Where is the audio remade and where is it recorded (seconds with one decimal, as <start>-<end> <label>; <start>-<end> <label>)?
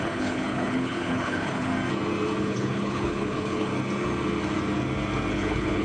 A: 0.0-1.7 remade; 1.7-2.4 recorded; 2.4-3.7 remade; 3.7-5.3 recorded; 5.3-5.8 remade